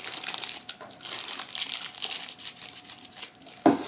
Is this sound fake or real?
real